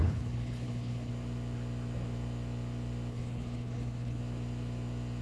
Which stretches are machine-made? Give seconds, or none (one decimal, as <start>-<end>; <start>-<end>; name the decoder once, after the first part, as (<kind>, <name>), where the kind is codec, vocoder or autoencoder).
0.0-1.1 (codec, HILCodec); 3.1-4.2